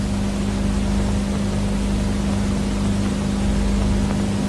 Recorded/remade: recorded